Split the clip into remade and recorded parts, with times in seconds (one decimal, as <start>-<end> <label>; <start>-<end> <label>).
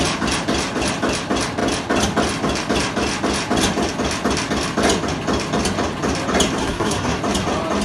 0.0-6.6 recorded; 6.6-7.2 remade; 7.2-7.8 recorded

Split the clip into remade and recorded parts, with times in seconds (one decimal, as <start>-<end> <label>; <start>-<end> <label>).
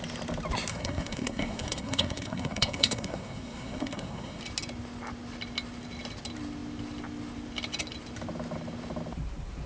0.0-0.7 recorded; 0.7-4.4 remade; 4.4-9.7 recorded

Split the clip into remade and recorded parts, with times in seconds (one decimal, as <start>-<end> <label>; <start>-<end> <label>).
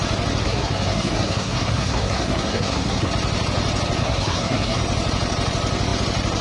0.0-0.4 recorded; 0.4-3.1 remade; 3.1-4.0 recorded; 4.0-4.8 remade; 4.8-6.4 recorded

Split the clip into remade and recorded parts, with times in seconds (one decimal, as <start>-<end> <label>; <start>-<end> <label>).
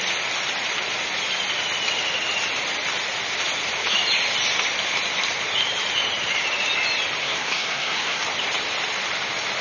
0.0-7.2 recorded; 7.2-8.2 remade; 8.2-9.6 recorded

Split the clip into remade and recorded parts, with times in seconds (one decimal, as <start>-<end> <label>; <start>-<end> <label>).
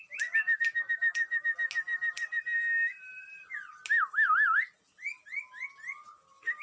0.0-6.6 recorded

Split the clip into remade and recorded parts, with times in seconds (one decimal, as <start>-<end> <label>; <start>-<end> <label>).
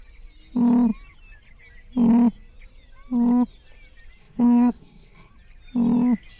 0.0-4.2 recorded; 4.2-5.3 remade; 5.3-6.4 recorded